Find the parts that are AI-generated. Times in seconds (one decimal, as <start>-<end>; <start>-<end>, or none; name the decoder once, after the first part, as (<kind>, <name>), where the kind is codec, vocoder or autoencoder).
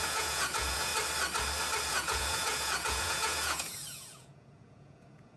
0.0-0.9 (vocoder, Vocos); 1.9-5.4